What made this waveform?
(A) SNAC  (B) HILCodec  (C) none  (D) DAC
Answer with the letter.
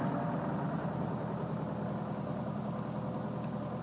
C